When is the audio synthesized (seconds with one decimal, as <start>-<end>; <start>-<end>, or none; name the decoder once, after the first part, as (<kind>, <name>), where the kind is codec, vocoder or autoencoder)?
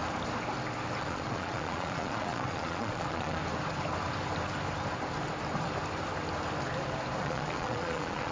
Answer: 1.0-3.4 (vocoder, Vocos); 7.2-8.3